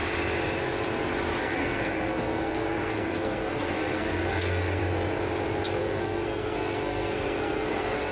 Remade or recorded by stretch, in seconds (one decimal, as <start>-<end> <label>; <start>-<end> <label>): 0.0-1.4 recorded; 1.4-4.8 remade; 4.8-5.8 recorded; 5.8-8.1 remade